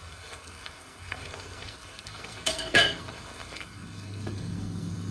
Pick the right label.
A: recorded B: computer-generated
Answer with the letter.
B